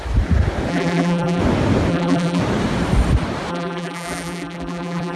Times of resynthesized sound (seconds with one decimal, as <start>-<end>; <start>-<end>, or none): 0.7-1.4; 1.9-2.4; 3.5-5.2